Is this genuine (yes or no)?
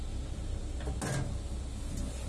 yes